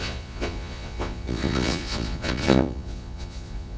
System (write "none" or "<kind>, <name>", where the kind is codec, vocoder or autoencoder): vocoder, Vocos